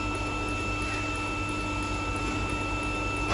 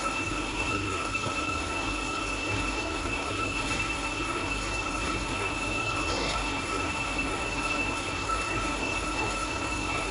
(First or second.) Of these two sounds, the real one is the first